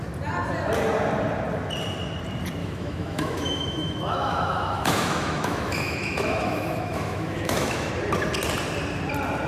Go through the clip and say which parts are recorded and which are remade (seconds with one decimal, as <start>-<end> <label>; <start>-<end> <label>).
0.0-2.6 recorded; 2.6-7.9 remade; 7.9-9.5 recorded